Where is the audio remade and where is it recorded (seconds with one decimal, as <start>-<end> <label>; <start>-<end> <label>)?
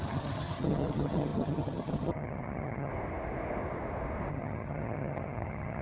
0.0-2.9 remade; 2.9-4.3 recorded; 4.3-5.8 remade